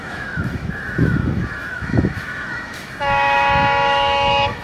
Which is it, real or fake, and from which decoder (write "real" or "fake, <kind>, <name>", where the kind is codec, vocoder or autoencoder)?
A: fake, autoencoder, DAC-VAE